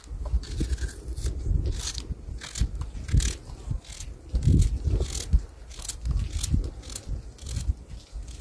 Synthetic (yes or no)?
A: no